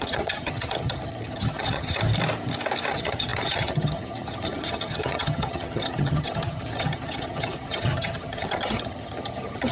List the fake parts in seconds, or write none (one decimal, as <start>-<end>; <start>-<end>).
0.0-2.1; 2.9-9.7